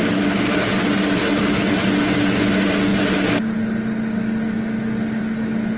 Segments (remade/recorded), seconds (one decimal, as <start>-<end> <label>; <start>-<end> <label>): 0.0-5.8 recorded